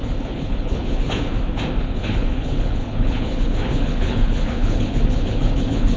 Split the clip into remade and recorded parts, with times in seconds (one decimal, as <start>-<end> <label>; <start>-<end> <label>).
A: 0.0-1.3 remade; 1.3-1.8 recorded; 1.8-6.0 remade